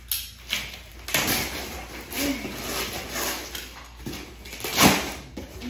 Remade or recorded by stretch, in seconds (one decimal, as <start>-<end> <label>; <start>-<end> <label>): 0.0-4.7 recorded; 4.7-5.7 remade